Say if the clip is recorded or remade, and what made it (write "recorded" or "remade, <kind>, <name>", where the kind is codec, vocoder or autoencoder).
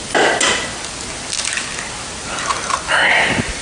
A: recorded